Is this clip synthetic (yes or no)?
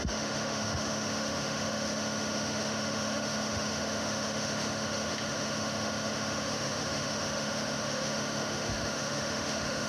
yes